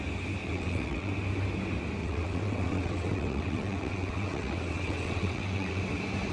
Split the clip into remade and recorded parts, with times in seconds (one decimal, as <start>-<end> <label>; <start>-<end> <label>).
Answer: 0.0-0.4 recorded; 0.4-1.1 remade; 1.1-2.0 recorded; 2.0-5.8 remade; 5.8-6.3 recorded